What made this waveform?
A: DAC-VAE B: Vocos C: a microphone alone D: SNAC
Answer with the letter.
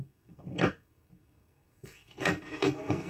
D